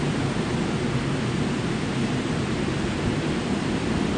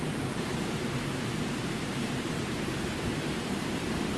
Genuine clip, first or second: first